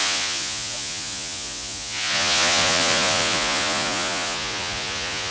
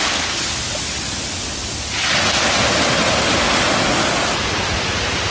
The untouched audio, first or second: second